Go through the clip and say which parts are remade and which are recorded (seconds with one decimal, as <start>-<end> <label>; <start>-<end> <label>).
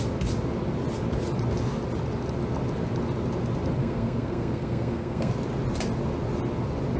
0.0-3.8 recorded; 3.8-5.3 remade; 5.3-7.0 recorded